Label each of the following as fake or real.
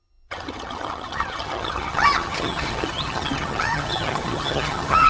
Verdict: fake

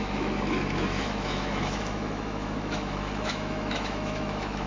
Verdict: fake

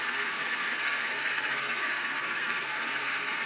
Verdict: fake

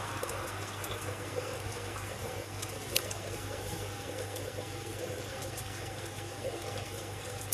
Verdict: fake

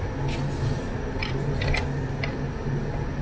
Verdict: real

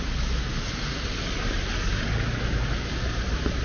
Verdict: real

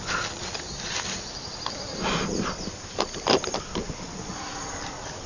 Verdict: fake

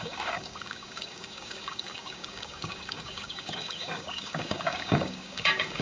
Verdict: fake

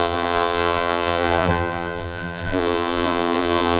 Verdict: fake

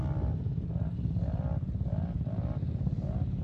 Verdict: real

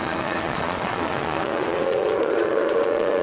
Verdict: fake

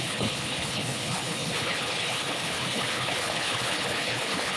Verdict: fake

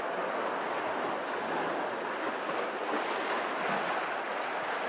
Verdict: real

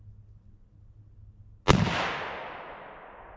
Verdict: real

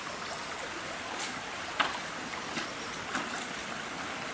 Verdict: real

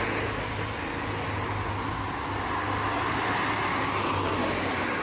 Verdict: real